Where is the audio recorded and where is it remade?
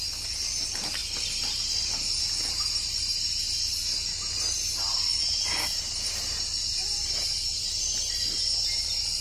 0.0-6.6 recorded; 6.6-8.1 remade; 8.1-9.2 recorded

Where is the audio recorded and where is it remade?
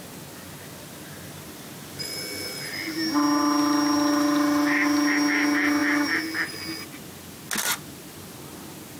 0.0-9.0 recorded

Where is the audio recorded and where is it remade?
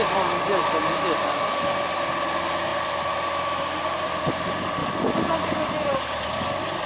0.0-0.6 remade; 0.6-1.5 recorded; 1.5-2.7 remade; 2.7-3.8 recorded; 3.8-4.8 remade; 4.8-5.3 recorded; 5.3-6.9 remade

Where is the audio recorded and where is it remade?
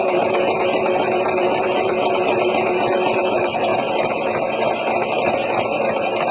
0.0-6.3 recorded